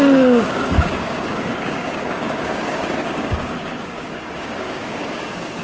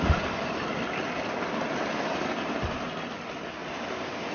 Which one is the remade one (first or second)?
first